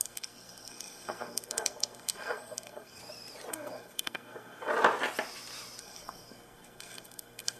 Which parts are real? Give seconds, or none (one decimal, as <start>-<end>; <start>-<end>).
3.0-3.5; 4.7-5.8